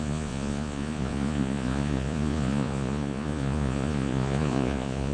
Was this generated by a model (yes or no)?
yes